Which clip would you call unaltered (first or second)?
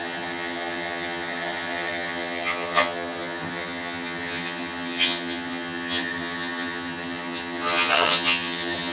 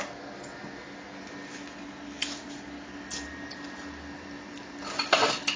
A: second